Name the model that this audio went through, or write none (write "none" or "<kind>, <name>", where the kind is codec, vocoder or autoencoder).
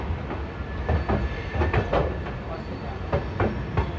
none